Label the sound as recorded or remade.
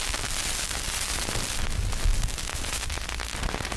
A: recorded